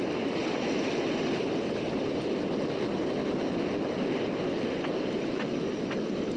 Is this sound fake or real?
real